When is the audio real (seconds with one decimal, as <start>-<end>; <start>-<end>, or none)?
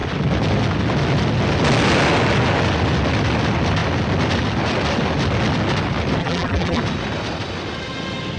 0.0-6.2; 6.8-8.4